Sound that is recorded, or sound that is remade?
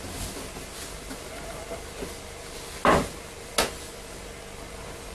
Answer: recorded